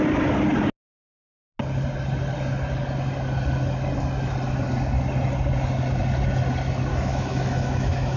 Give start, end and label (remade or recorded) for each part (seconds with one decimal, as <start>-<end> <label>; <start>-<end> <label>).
0.0-6.9 recorded; 6.9-8.2 remade